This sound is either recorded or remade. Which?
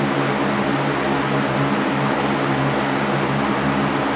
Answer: recorded